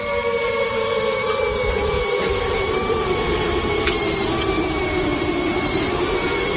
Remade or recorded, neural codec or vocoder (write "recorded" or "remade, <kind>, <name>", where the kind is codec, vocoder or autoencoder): remade, vocoder, BigVGAN v2